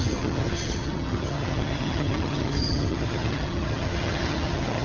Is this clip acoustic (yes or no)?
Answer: no